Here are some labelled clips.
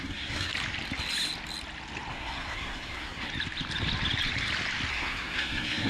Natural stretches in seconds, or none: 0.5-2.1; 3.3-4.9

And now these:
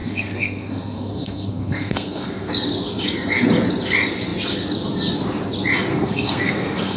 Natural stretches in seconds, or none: 2.5-5.9

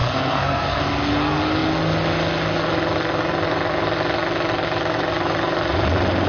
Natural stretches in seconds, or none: 0.8-6.3

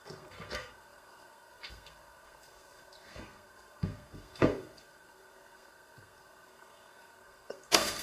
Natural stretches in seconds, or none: none

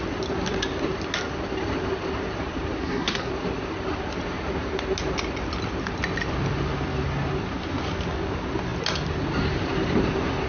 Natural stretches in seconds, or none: 0.0-2.8; 3.3-10.5

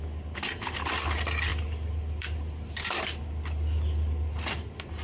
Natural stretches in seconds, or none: 0.0-5.0

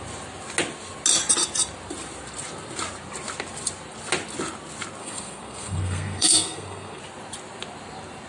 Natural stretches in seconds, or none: 0.0-5.0; 7.0-8.3

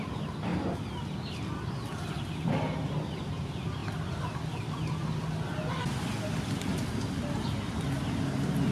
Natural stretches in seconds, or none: 0.0-8.7